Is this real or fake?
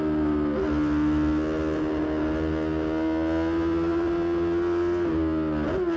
real